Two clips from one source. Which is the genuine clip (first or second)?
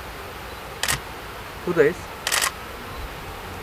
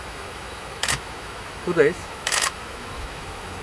first